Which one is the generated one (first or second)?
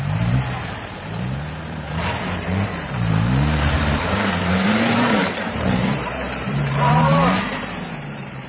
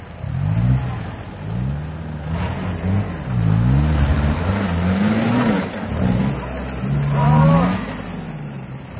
first